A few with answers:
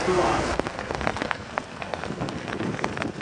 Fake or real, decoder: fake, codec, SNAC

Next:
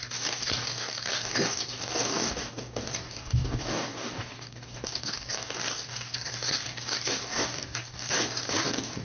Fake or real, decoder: fake, codec, DAC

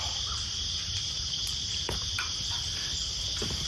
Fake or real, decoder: real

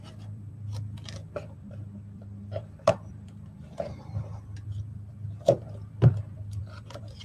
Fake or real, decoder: fake, vocoder, BigVGAN v2